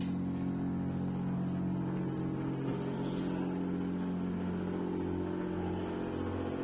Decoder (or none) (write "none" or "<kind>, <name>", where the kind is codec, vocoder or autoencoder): none